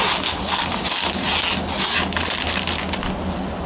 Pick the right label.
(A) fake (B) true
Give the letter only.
B